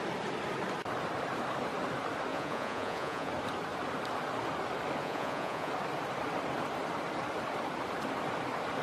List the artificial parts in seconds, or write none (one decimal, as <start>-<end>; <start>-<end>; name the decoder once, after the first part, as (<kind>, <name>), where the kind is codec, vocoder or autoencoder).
2.3-3.3 (vocoder, Vocos); 5.0-5.7